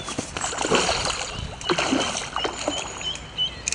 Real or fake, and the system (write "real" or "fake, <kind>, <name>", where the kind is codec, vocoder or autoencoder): real